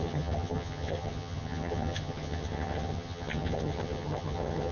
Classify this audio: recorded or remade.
remade